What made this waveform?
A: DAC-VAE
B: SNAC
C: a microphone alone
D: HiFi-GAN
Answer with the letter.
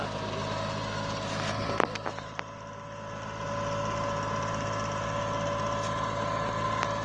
C